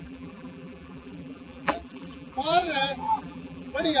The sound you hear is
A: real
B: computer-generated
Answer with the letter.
B